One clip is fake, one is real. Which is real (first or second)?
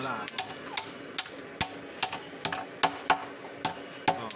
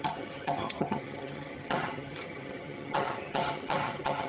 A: first